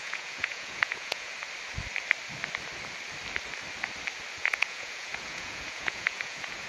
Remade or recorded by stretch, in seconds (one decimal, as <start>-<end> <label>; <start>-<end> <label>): 0.0-1.3 remade; 1.3-4.4 recorded; 4.4-6.7 remade

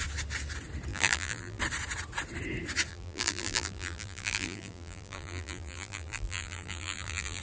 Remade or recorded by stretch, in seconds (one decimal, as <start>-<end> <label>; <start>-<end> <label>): 0.0-0.9 recorded; 0.9-1.6 remade; 1.6-2.9 recorded; 2.9-7.4 remade

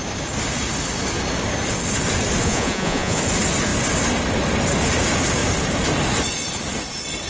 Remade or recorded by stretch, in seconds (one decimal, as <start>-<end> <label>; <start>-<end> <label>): 0.0-2.4 recorded; 2.4-3.2 remade; 3.2-7.3 recorded

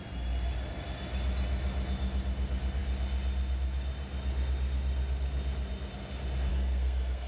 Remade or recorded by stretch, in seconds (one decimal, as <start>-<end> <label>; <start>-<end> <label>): 0.0-6.5 recorded; 6.5-7.3 remade

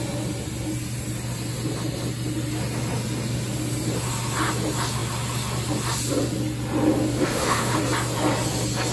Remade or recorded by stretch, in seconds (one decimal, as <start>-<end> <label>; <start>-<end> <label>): 0.0-7.2 recorded; 7.2-7.8 remade; 7.8-8.9 recorded

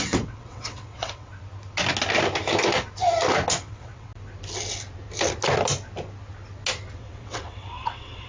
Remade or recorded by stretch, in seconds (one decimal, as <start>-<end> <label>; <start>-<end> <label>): 0.0-1.3 remade; 1.3-3.6 recorded; 3.6-4.1 remade; 4.1-6.9 recorded; 6.9-8.3 remade

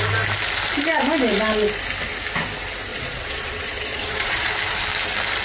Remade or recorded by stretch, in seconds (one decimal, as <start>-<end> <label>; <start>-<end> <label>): 0.0-2.9 recorded; 2.9-4.5 remade; 4.5-5.4 recorded

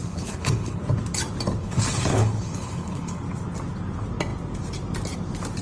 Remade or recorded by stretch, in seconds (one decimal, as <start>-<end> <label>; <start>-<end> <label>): 0.0-0.8 remade; 0.8-1.6 recorded; 1.6-3.2 remade; 3.2-5.6 recorded